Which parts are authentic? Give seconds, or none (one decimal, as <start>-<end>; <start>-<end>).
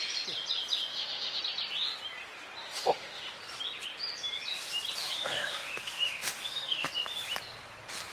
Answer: 0.0-0.9; 1.4-2.6; 3.4-5.0; 6.9-8.1